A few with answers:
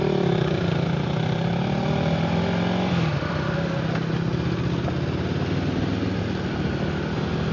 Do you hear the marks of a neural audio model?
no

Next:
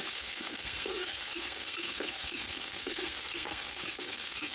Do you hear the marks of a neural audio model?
yes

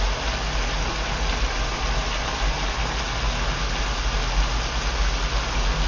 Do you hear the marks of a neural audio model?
no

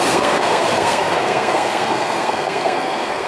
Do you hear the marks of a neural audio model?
yes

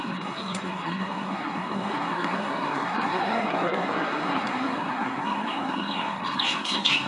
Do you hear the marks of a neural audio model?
yes